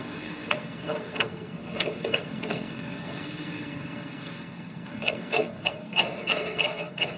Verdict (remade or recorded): remade